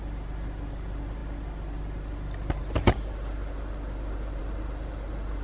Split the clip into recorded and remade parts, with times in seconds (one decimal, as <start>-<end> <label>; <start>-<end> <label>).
0.0-5.4 recorded